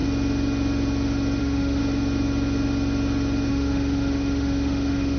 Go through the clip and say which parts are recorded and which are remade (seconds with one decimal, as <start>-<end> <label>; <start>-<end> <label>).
0.0-1.4 recorded; 1.4-1.8 remade; 1.8-3.5 recorded; 3.5-5.2 remade